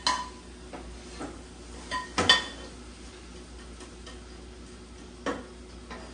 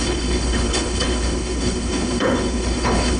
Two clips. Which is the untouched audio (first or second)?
first